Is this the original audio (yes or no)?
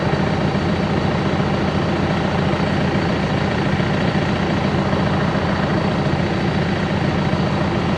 yes